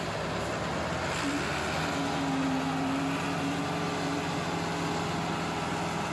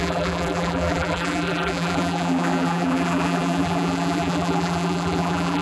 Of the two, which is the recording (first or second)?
first